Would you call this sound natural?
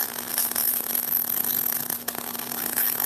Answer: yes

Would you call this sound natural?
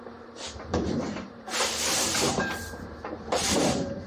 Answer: no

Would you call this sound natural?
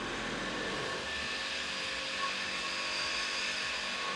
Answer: yes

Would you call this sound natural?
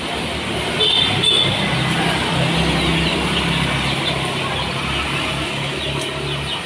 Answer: yes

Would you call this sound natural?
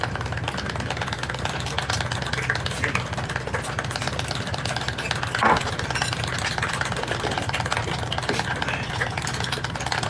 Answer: yes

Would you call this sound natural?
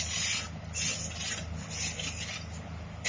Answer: yes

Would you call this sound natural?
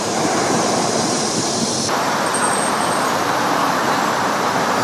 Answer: no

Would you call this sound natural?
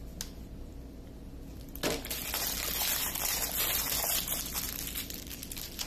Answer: yes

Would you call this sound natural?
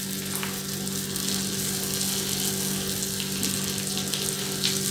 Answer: yes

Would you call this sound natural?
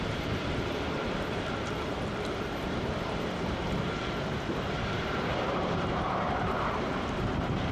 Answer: no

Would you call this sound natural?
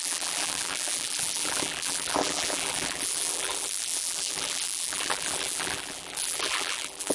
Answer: no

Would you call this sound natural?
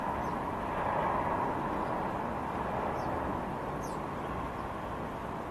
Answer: yes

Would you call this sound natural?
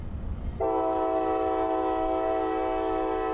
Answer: yes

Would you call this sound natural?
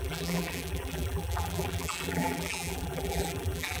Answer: no